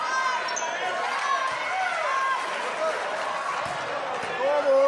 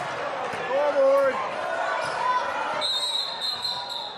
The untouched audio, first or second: first